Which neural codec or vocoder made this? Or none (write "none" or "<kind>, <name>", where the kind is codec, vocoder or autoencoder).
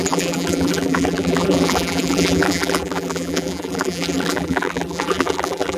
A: vocoder, BigVGAN v2